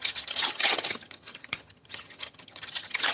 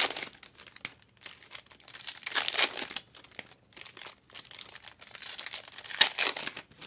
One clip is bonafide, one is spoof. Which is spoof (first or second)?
first